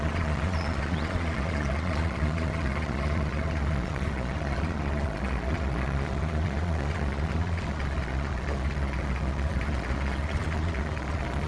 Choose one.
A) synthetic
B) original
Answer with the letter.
A